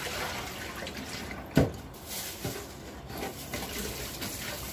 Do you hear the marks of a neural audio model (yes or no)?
no